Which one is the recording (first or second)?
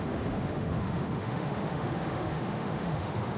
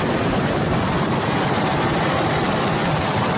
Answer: second